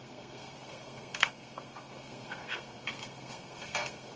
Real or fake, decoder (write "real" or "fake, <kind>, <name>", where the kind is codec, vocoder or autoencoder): fake, codec, SNAC